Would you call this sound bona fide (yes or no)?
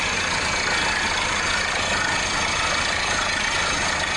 yes